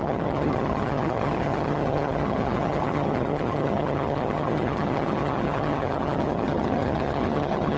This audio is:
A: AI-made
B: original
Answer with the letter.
A